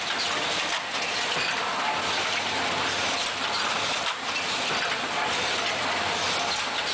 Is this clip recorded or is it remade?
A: recorded